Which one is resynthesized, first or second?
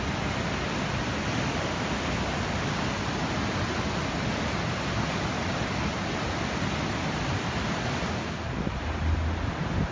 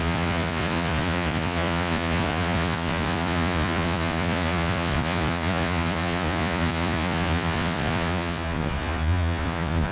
second